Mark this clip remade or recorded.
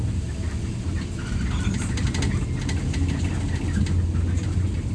recorded